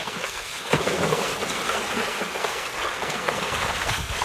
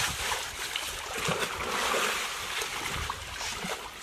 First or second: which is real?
second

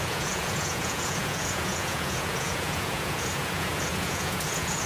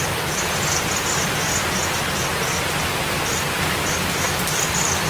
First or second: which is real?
second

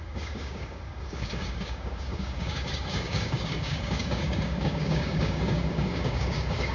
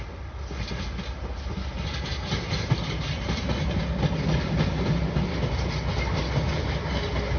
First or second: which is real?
second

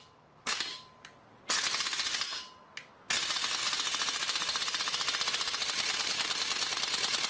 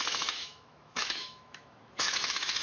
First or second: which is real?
first